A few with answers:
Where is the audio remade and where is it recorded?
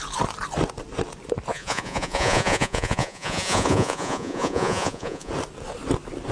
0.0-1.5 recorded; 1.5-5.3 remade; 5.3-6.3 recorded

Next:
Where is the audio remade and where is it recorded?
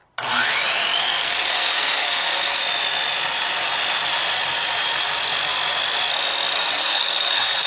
0.0-1.0 recorded; 1.0-2.6 remade; 2.6-6.7 recorded; 6.7-7.7 remade